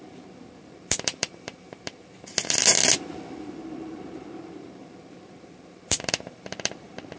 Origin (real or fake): fake